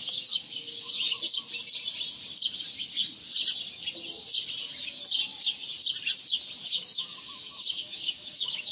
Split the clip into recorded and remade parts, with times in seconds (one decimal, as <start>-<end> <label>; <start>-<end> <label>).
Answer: 0.0-1.2 remade; 1.2-6.6 recorded; 6.6-8.7 remade